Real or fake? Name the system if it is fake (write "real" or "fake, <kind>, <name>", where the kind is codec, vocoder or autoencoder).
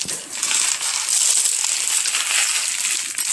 real